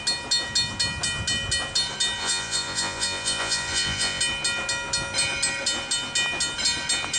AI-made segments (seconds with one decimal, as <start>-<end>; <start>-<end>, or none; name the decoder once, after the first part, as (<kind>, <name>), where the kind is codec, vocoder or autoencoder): 2.2-4.2 (vocoder, Vocos)